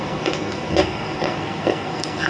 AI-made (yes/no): yes